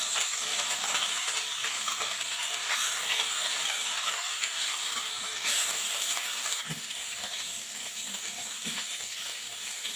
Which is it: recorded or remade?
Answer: remade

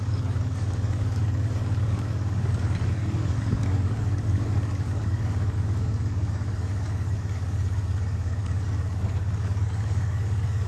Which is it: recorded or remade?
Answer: remade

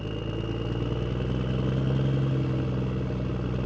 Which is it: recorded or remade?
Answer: recorded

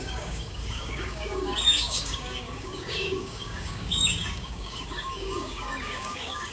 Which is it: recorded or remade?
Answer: remade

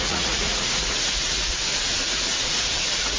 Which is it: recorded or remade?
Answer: remade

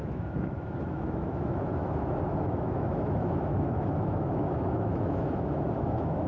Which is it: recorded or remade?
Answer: remade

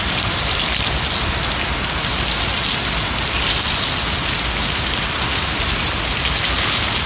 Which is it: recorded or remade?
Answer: recorded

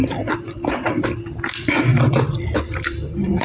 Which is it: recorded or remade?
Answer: recorded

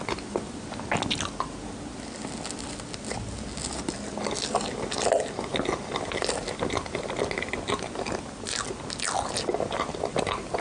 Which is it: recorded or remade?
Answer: recorded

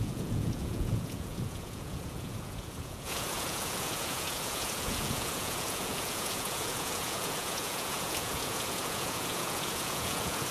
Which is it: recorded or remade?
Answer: remade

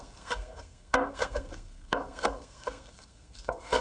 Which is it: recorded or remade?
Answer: remade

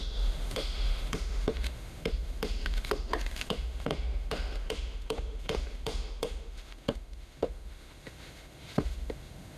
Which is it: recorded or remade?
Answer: remade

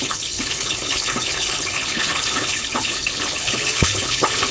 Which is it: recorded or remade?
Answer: remade